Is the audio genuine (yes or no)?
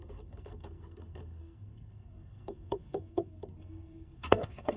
no